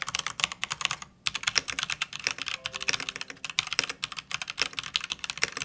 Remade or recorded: recorded